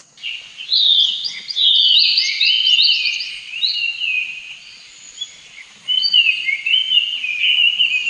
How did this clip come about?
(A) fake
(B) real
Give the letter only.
B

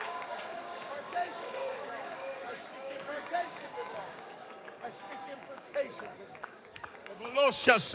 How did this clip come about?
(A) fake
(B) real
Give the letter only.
A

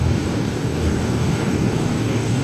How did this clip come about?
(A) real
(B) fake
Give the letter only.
B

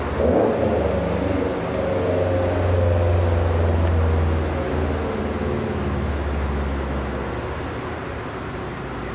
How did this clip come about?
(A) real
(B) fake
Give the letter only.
A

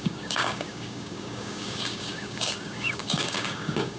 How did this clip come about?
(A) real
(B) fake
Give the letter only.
B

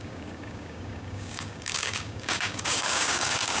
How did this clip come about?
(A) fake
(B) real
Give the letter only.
A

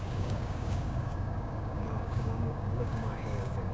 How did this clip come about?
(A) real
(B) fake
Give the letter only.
B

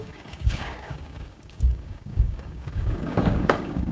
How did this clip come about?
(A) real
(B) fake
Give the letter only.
B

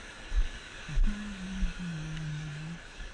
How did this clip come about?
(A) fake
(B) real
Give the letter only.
A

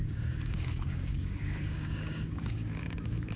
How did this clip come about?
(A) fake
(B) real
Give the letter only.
A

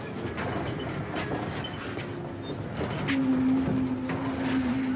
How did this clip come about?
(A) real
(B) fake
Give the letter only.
A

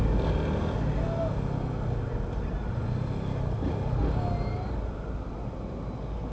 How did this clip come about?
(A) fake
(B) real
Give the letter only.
B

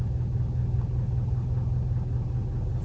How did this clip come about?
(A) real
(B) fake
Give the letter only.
A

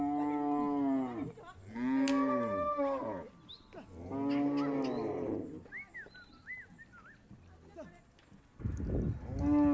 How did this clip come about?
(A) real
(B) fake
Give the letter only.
A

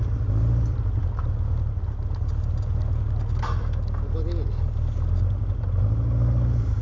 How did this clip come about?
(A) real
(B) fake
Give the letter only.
A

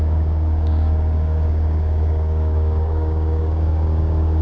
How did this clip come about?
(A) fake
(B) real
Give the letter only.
A